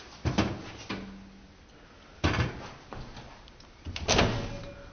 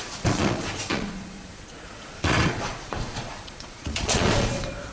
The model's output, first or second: second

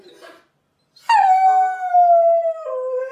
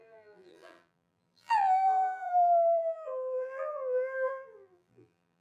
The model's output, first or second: second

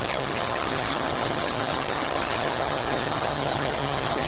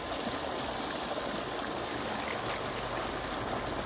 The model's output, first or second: first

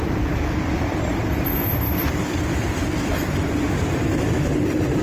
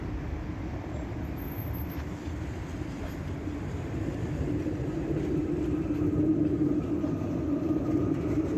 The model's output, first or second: first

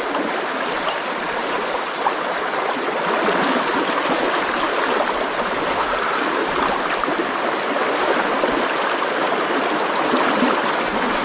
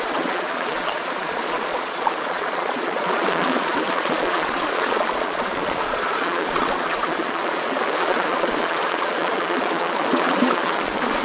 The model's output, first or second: second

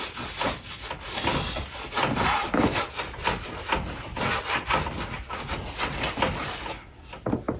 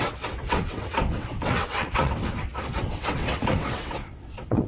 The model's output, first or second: second